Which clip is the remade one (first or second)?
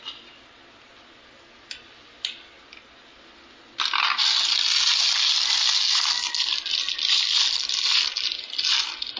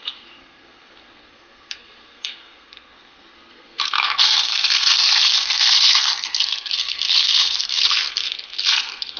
second